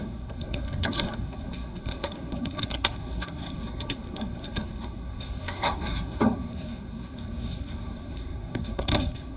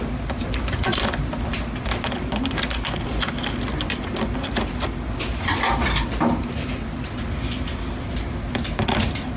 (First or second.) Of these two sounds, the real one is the second